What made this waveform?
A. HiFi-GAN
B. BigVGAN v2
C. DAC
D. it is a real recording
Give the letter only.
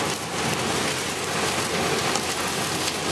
D